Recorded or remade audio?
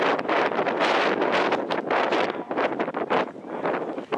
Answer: recorded